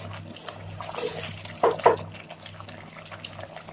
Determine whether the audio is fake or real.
real